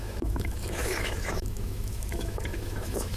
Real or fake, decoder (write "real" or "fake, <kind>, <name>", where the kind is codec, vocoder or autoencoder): fake, autoencoder, DAC-VAE